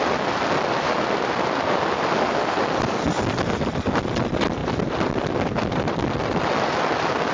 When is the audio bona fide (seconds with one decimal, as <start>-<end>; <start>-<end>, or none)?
0.0-7.3